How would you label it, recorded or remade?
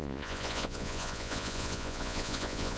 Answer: remade